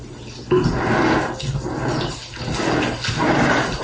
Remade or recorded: recorded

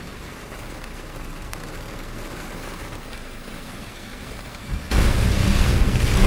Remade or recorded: remade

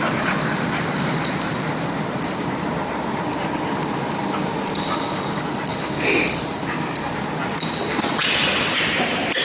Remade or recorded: recorded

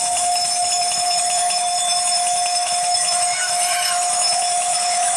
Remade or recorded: remade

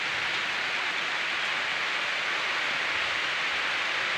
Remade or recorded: recorded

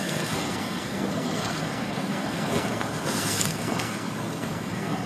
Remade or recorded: remade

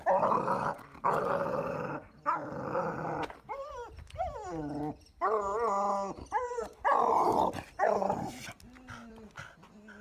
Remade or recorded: recorded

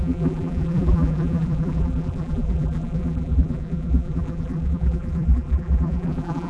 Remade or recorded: remade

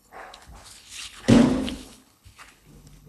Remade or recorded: remade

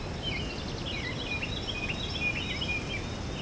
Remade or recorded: recorded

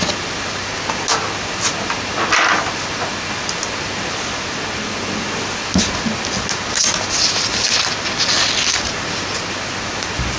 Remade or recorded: recorded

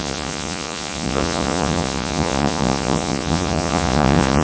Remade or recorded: remade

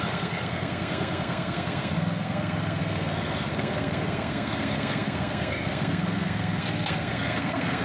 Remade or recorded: remade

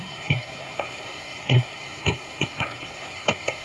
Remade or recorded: remade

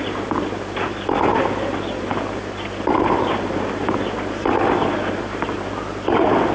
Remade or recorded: recorded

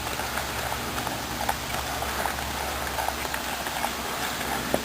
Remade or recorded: recorded